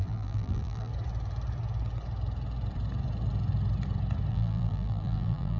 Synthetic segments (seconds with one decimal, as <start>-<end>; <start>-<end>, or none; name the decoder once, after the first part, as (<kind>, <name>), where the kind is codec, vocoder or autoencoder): 0.0-0.9 (vocoder, BigVGAN v2); 4.3-5.6